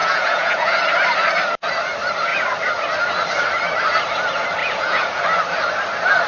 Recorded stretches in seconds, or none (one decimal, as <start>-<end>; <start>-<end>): 0.8-4.6; 5.2-6.3